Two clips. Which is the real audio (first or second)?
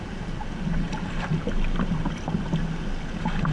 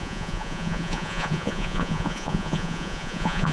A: first